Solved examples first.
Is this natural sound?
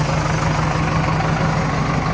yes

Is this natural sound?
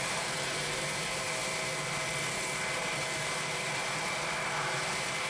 yes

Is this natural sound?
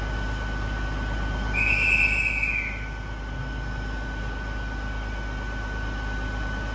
yes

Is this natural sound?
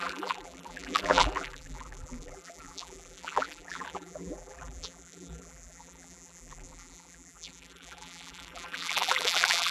no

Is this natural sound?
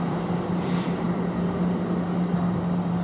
yes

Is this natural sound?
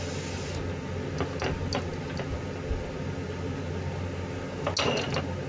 yes